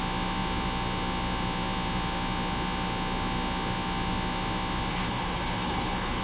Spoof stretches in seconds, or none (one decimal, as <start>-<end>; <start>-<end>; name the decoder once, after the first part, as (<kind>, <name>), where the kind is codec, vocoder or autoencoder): 4.9-6.2 (codec, HILCodec)